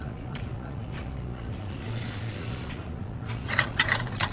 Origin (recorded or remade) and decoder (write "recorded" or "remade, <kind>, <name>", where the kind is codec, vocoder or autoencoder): remade, vocoder, Vocos